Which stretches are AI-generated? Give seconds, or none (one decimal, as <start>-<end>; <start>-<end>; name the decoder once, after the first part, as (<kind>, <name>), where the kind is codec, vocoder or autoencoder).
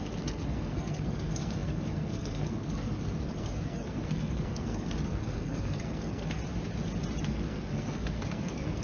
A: 0.0-6.4 (codec, SNAC); 7.2-8.8